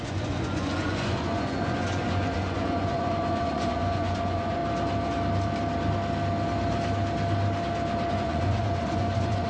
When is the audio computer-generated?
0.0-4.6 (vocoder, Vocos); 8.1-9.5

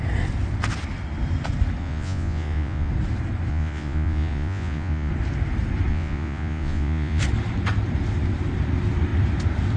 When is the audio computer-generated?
1.8-2.9 (vocoder, Vocos); 3.5-5.1; 5.9-7.2

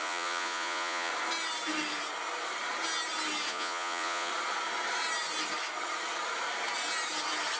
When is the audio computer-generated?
0.0-1.1 (vocoder, Vocos); 3.5-4.3

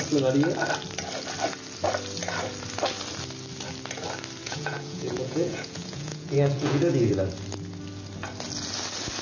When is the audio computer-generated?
4.4-7.1 (vocoder, Vocos)

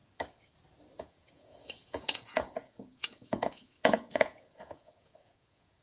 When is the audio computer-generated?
1.0-5.8 (vocoder, Vocos)